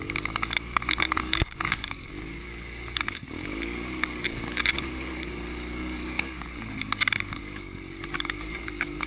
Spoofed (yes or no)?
yes